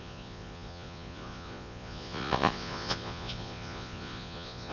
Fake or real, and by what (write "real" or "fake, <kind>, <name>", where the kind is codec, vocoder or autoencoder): fake, vocoder, Vocos